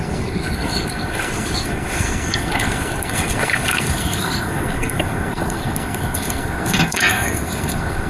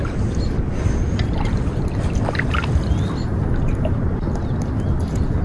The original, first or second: second